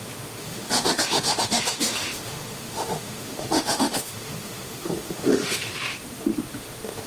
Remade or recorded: remade